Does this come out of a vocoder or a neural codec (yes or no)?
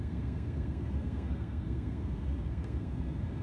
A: yes